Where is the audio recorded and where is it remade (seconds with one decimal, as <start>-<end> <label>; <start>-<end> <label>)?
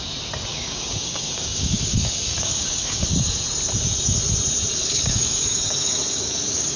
0.0-0.5 recorded; 0.5-3.4 remade; 3.4-4.8 recorded; 4.8-6.8 remade